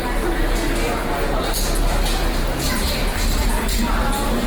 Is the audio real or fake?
real